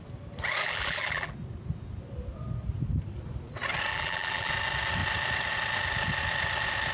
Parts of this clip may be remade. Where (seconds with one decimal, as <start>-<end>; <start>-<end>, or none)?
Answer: 0.6-1.3; 3.9-4.5